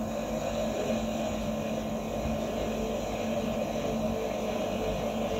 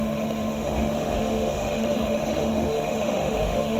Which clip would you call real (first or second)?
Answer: first